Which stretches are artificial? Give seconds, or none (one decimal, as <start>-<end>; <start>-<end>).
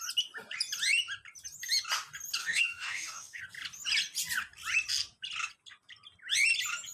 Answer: 2.4-3.4